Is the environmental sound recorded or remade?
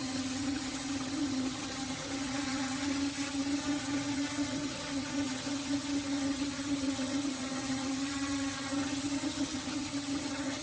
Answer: remade